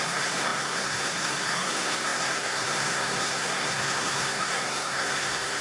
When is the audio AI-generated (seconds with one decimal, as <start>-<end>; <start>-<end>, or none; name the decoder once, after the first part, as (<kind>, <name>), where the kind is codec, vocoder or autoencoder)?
0.0-5.6 (codec, SNAC)